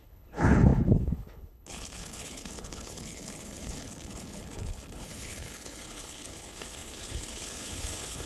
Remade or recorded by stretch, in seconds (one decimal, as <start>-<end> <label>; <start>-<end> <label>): 0.0-8.3 remade